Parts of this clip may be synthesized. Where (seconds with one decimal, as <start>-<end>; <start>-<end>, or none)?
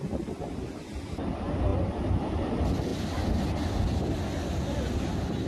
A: none